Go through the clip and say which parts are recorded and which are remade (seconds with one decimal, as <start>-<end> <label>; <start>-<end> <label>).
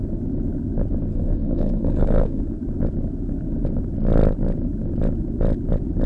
0.0-1.1 recorded; 1.1-2.4 remade; 2.4-6.1 recorded